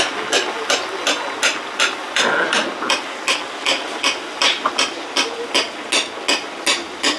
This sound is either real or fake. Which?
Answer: real